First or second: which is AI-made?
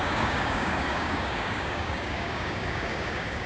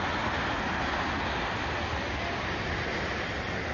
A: first